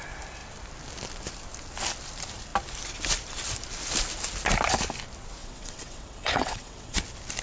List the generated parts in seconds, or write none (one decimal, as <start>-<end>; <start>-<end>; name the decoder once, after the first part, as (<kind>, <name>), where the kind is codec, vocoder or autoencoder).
5.4-7.0 (vocoder, WaveNeXt)